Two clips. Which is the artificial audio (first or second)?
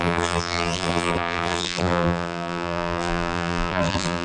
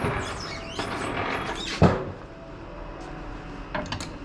first